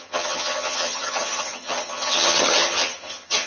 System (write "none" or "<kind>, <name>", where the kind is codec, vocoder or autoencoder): vocoder, HiFi-GAN